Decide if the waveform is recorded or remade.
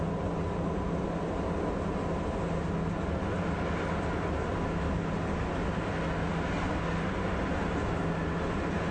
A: recorded